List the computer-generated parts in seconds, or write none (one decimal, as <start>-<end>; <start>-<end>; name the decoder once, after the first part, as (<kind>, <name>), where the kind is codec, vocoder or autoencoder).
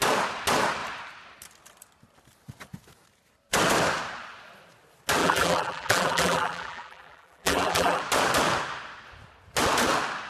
5.2-8.0 (vocoder, BigVGAN v2)